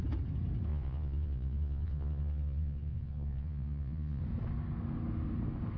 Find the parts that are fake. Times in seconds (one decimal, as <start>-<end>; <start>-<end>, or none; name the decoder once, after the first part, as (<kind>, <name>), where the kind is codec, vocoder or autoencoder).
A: 0.7-4.2 (vocoder, Vocos)